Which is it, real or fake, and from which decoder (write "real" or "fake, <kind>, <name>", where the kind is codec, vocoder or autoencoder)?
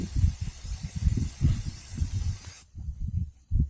fake, vocoder, WaveNeXt